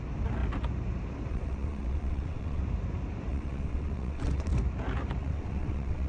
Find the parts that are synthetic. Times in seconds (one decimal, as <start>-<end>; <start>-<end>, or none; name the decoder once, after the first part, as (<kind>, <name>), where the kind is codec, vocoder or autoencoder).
1.3-2.6 (vocoder, WaveNeXt); 3.3-4.5; 5.2-6.1